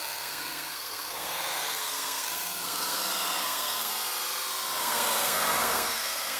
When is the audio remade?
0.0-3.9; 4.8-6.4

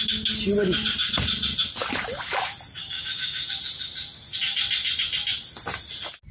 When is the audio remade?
2.8-3.5